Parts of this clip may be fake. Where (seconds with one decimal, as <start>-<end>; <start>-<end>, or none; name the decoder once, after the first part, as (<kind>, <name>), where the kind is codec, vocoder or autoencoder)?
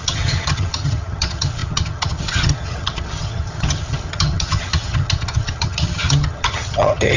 0.0-7.2 (vocoder, HiFi-GAN)